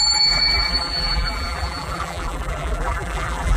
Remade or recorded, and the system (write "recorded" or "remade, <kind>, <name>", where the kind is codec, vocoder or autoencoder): remade, vocoder, BigVGAN v2